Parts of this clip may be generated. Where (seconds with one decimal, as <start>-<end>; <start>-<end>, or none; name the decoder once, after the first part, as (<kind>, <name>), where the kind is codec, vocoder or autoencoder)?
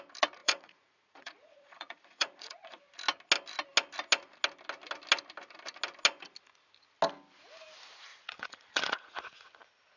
0.4-2.8 (vocoder, Vocos); 8.1-9.5